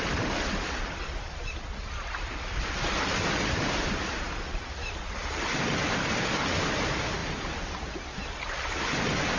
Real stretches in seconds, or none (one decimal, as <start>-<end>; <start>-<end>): 0.0-9.4